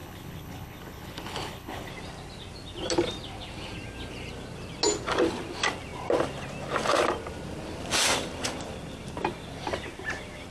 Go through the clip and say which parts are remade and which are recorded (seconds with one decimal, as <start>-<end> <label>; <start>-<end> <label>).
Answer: 0.0-1.9 remade; 1.9-10.5 recorded